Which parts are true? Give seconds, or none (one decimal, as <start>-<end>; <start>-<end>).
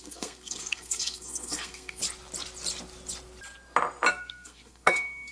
2.0-4.1